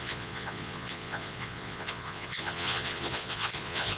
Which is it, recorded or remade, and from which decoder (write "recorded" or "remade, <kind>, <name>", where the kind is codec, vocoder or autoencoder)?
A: remade, vocoder, Vocos